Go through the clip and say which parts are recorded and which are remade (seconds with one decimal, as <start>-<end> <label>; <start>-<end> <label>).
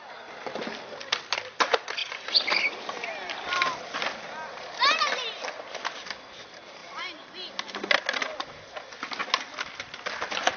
0.0-6.8 recorded; 6.8-7.8 remade; 7.8-10.6 recorded